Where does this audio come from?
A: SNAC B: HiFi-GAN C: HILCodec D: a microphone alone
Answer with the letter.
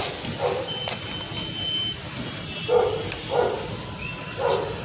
D